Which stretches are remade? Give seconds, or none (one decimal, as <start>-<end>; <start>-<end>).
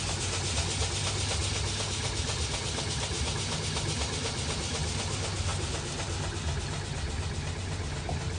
none